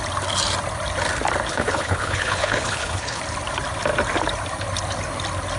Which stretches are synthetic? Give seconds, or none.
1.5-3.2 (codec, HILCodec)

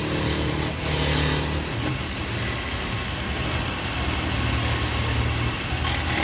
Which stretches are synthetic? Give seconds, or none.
none

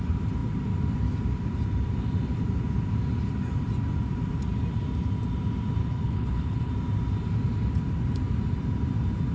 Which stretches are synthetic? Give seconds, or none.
5.8-6.7 (codec, HILCodec)